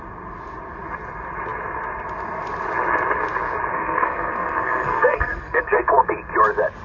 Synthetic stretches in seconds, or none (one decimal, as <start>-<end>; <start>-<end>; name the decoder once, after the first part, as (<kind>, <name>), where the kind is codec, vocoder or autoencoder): 3.7-5.8 (codec, SNAC)